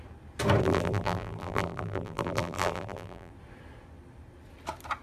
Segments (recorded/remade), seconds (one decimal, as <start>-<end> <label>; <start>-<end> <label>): 0.0-0.6 recorded; 0.6-3.3 remade; 3.3-5.0 recorded